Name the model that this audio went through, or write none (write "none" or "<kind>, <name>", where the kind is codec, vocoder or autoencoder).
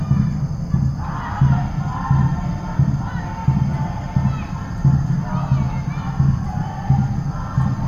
none